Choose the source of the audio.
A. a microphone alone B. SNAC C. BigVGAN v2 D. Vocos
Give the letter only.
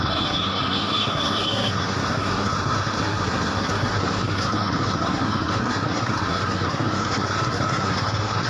B